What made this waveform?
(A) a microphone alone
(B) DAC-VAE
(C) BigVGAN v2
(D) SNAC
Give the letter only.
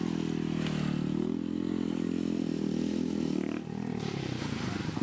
A